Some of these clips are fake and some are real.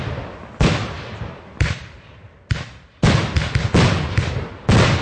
real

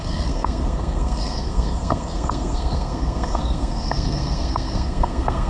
fake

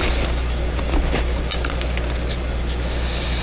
real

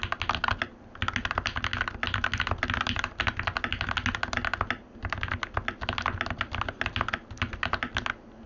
real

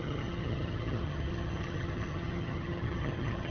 fake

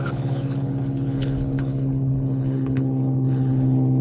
fake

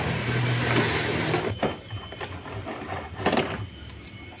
fake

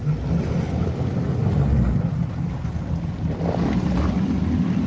real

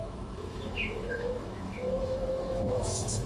fake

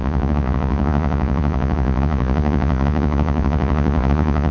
fake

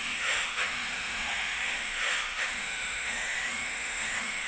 fake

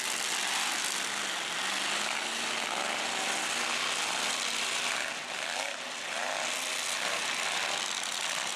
real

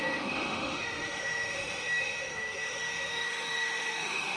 fake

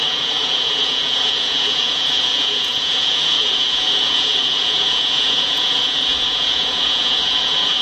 fake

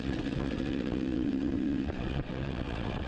fake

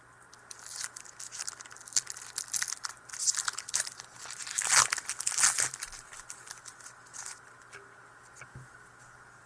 real